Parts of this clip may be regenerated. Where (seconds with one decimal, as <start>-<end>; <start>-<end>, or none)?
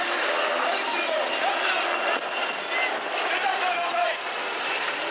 none